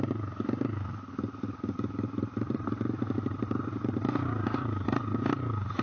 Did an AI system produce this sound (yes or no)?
yes